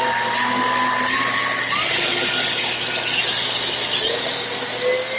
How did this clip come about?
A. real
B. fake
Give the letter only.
A